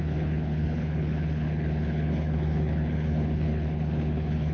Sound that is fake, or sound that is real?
fake